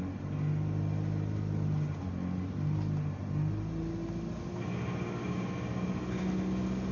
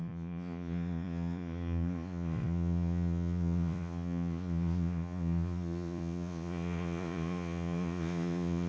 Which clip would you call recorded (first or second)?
first